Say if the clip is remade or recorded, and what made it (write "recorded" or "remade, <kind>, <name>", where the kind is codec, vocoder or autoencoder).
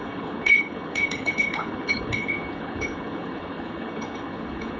remade, codec, HILCodec